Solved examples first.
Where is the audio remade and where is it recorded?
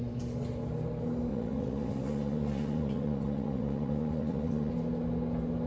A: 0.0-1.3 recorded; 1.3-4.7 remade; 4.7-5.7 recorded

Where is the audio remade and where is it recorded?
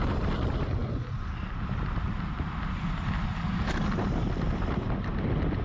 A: 0.0-5.6 recorded